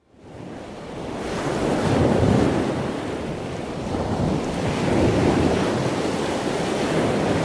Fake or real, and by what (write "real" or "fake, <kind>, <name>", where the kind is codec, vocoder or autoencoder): real